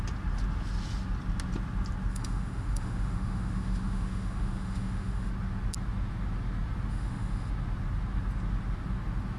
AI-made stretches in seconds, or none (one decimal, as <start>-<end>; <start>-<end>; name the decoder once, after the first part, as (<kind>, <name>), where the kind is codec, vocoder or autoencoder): 2.1-5.3 (autoencoder, DAC-VAE); 6.9-7.5